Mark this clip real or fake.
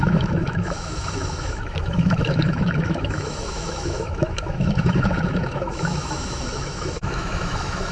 fake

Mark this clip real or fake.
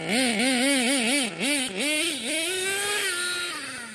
real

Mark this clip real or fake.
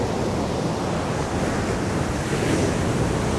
real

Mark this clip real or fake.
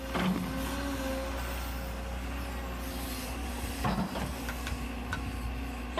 real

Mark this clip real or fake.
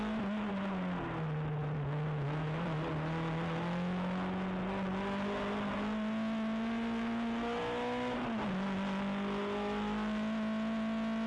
real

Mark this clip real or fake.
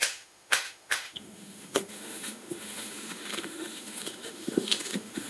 fake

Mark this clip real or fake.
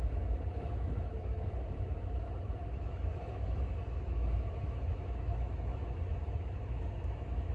fake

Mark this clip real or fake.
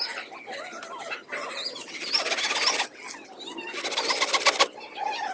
real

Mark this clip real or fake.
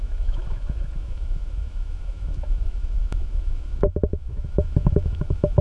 fake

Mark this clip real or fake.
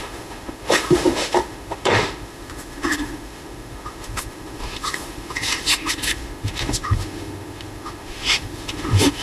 fake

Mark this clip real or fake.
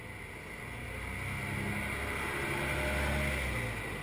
real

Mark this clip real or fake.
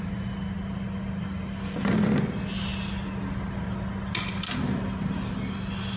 real